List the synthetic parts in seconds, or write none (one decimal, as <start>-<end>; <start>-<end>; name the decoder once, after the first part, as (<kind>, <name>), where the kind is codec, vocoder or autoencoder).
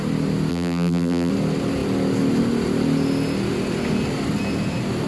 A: 0.5-1.3 (vocoder, BigVGAN v2)